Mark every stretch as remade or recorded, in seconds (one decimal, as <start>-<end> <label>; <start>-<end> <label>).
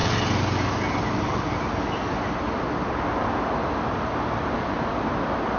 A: 0.0-5.6 recorded